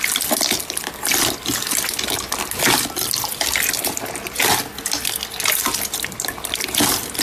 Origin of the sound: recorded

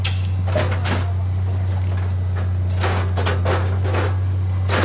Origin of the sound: recorded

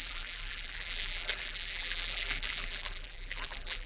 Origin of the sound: remade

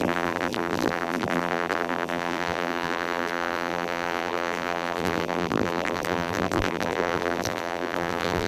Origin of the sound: remade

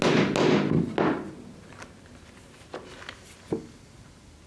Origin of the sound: recorded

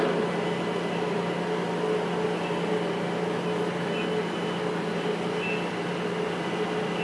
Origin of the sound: recorded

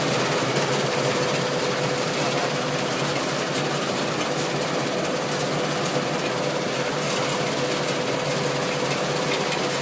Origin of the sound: recorded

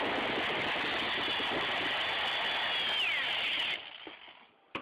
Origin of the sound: recorded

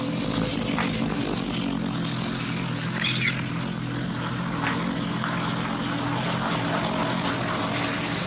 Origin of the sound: recorded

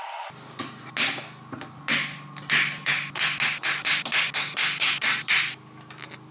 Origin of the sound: recorded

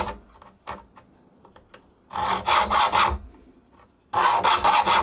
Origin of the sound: recorded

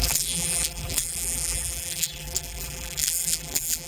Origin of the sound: remade